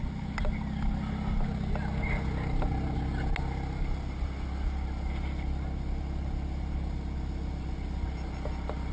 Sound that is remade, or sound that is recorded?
recorded